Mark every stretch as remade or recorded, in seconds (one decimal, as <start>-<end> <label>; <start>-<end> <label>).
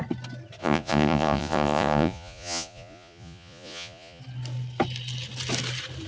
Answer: 0.0-0.6 recorded; 0.6-4.2 remade; 4.2-6.1 recorded